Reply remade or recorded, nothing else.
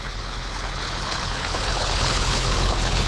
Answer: remade